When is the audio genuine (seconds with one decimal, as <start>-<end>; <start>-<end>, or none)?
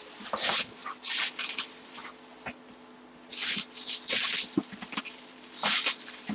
0.8-1.3; 2.0-5.0